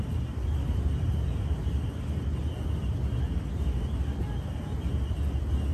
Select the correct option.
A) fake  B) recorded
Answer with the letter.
B